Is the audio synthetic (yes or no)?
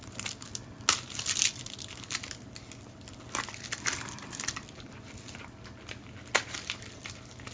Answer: no